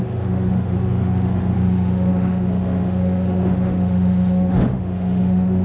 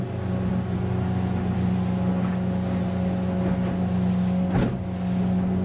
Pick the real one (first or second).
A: second